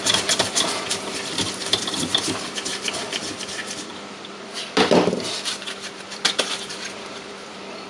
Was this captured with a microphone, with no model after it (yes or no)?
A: no